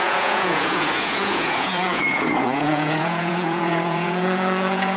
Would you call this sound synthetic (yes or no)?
yes